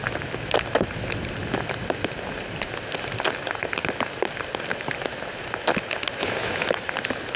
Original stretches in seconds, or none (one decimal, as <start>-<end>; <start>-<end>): 0.0-6.2; 6.7-7.4